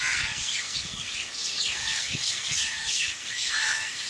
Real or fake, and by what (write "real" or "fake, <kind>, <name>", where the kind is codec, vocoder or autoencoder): fake, codec, SNAC